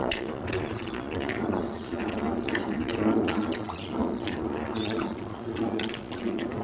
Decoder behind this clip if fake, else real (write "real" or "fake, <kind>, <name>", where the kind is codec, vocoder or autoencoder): fake, vocoder, Vocos